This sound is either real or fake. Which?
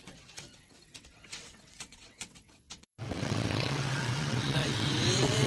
fake